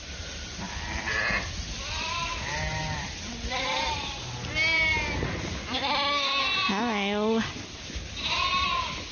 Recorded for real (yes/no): yes